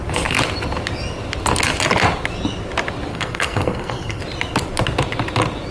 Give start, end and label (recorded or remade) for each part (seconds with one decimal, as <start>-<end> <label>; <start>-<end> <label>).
0.0-3.1 recorded; 3.1-4.2 remade; 4.2-5.7 recorded